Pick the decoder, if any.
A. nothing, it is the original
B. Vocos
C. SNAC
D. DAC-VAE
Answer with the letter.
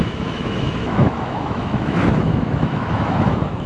D